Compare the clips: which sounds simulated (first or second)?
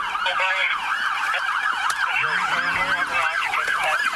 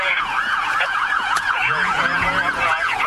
second